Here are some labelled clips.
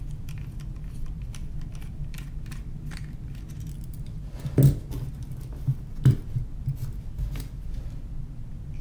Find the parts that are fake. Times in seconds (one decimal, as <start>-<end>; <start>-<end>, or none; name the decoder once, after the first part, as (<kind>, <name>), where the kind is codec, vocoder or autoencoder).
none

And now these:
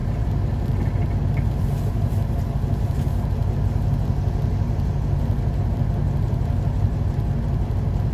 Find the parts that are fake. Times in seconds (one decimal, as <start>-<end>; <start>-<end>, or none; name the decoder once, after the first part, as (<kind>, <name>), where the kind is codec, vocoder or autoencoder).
none

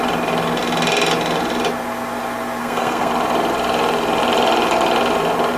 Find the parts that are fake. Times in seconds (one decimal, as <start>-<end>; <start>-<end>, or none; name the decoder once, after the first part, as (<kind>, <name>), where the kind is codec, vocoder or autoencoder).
2.6-3.1 (codec, SNAC)